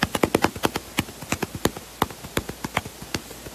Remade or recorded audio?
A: recorded